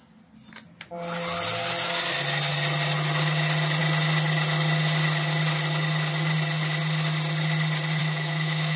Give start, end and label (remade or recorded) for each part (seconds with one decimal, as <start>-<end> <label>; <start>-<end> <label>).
0.0-8.0 recorded; 8.0-8.8 remade